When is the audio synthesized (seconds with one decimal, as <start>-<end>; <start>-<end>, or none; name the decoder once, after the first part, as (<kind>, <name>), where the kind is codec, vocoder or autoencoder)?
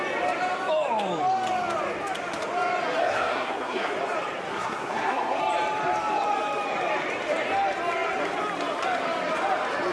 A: 3.0-3.9 (codec, SNAC); 4.5-5.4